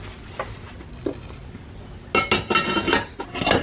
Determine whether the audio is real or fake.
real